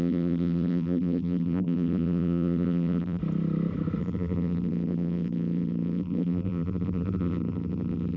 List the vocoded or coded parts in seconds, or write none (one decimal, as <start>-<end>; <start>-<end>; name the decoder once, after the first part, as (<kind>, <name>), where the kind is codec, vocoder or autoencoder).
0.0-3.2 (vocoder, BigVGAN v2); 4.0-8.2